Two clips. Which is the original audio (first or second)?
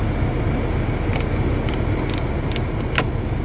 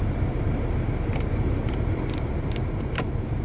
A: first